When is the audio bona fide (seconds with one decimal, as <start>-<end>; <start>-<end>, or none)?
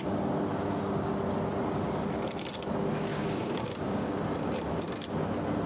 0.0-3.1; 4.1-5.7